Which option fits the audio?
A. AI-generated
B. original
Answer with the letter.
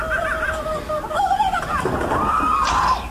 B